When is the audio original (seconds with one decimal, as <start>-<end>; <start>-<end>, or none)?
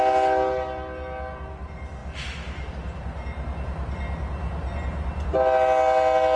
0.0-6.4